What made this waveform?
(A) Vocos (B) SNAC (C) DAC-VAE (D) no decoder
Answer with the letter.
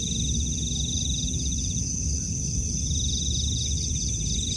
D